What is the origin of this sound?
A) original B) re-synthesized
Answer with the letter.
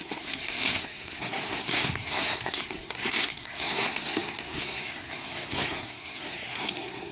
B